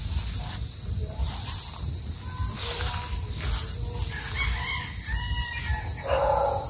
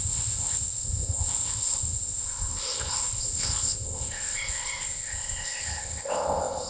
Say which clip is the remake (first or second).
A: second